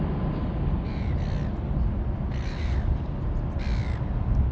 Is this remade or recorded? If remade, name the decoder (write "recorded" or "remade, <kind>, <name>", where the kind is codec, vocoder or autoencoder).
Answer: recorded